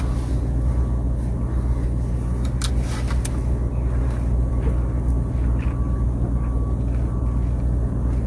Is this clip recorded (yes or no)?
yes